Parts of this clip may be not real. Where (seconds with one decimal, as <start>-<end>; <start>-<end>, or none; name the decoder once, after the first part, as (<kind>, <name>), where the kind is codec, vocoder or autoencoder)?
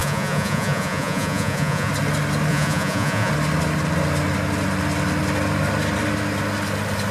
0.0-1.9 (vocoder, Vocos); 2.5-3.3